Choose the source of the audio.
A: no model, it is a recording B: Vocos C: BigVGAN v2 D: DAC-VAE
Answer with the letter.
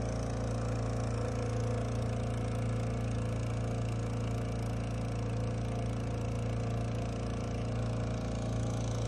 A